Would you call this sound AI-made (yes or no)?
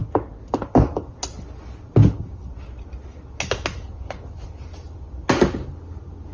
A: no